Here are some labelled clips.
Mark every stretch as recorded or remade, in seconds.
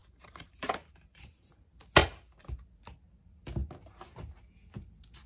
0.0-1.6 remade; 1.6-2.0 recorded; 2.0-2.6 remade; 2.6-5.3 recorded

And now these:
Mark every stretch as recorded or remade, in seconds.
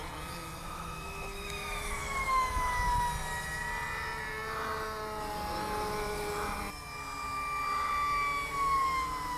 0.0-0.6 recorded; 0.6-3.1 remade; 3.1-9.4 recorded